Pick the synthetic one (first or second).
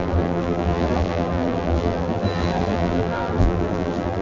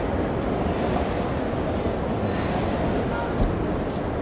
first